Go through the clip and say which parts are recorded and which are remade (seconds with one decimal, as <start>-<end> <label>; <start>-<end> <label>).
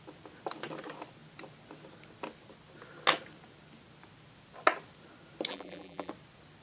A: 0.0-5.5 recorded; 5.5-6.1 remade; 6.1-6.6 recorded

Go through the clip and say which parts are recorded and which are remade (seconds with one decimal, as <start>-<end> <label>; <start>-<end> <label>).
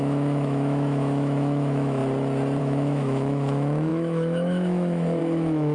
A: 0.0-2.0 remade; 2.0-2.6 recorded; 2.6-5.7 remade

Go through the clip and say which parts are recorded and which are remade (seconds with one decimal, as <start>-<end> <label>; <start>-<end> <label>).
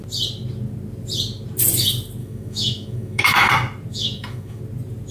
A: 0.0-2.2 recorded; 2.2-3.5 remade; 3.5-3.9 recorded; 3.9-4.6 remade; 4.6-5.1 recorded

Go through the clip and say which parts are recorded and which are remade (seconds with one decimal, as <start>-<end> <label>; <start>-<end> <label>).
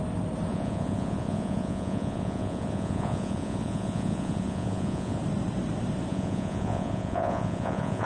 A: 0.0-0.5 recorded; 0.5-5.2 remade; 5.2-6.1 recorded; 6.1-8.1 remade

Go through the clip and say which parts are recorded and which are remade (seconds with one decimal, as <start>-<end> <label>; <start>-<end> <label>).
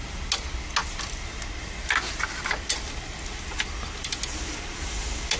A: 0.0-5.4 recorded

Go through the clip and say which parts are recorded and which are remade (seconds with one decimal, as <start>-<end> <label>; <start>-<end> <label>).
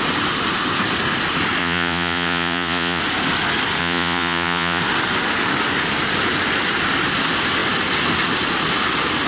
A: 0.0-1.6 recorded; 1.6-3.0 remade; 3.0-3.8 recorded; 3.8-4.8 remade; 4.8-9.3 recorded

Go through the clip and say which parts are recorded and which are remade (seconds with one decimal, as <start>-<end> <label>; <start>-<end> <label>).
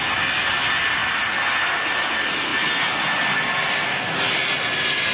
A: 0.0-5.1 recorded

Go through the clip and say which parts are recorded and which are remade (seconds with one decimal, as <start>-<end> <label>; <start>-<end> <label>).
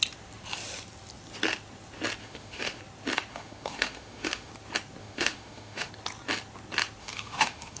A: 0.0-2.2 recorded; 2.2-2.8 remade; 2.8-3.3 recorded; 3.3-4.5 remade; 4.5-5.0 recorded; 5.0-5.9 remade; 5.9-7.0 recorded; 7.0-7.8 remade